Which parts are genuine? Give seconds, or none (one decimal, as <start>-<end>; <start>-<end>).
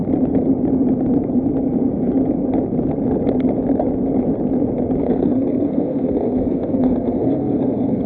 0.0-5.0